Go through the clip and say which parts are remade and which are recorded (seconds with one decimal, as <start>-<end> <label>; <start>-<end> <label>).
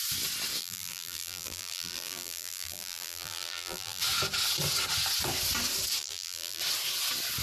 0.0-0.6 recorded; 0.6-4.0 remade; 4.0-6.0 recorded; 6.0-6.6 remade; 6.6-7.4 recorded